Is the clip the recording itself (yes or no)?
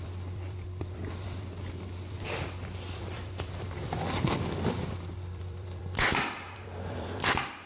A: no